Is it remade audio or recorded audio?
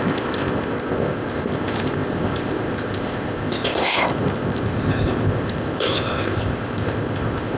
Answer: remade